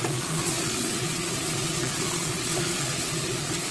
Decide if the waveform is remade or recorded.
remade